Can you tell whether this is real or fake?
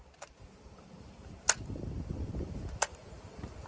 fake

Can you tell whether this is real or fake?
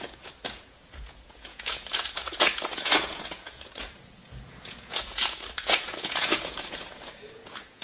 fake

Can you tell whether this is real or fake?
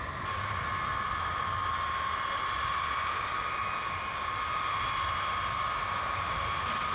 real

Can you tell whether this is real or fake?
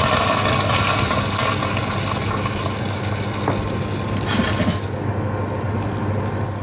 real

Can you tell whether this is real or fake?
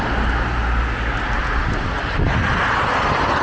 real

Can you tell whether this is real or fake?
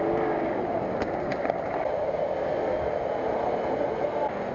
real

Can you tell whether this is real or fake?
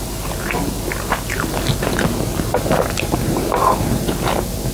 real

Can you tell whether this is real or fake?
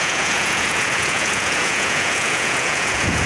fake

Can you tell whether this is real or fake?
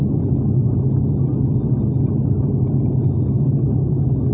real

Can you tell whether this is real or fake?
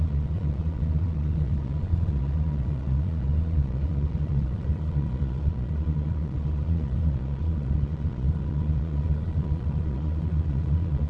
fake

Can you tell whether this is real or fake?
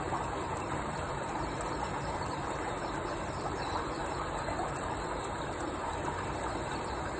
fake